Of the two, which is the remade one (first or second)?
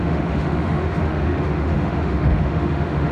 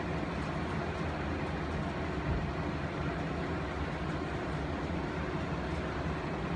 first